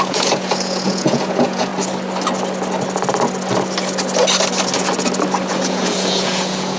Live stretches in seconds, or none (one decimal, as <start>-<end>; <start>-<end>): 1.7-5.5